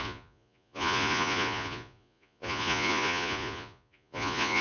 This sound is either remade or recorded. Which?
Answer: remade